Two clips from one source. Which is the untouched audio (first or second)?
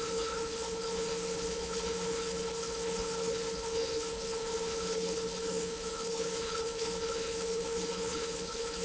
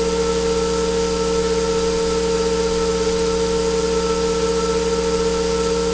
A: second